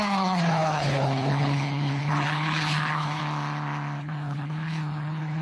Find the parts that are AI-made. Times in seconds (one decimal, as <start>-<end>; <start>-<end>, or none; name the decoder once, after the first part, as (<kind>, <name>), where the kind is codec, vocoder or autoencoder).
0.0-3.2 (codec, HILCodec); 4.0-5.4

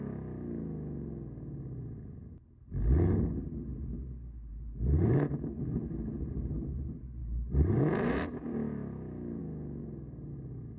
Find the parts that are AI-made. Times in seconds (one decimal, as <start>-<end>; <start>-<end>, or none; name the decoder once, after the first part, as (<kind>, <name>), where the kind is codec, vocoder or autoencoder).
4.5-5.6 (vocoder, BigVGAN v2); 7.2-8.2; 9.8-10.3

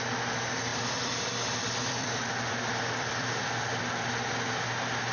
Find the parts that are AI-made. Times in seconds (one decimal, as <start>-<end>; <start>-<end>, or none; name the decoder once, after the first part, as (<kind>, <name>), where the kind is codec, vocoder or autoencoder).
0.7-3.8 (vocoder, BigVGAN v2)

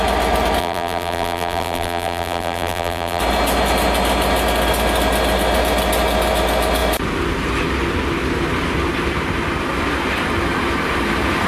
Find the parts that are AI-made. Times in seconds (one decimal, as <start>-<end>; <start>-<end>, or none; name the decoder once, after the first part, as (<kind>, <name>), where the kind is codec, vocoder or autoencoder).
0.6-3.2 (vocoder, BigVGAN v2)